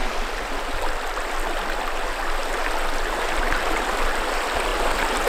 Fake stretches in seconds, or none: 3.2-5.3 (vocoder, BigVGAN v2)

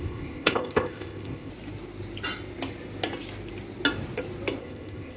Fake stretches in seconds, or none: 0.0-1.5 (codec, ZipCodec); 4.6-5.2